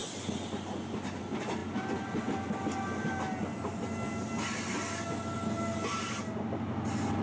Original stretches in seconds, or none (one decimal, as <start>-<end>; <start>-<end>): 0.0-7.2